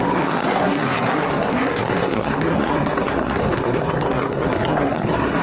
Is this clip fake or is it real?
fake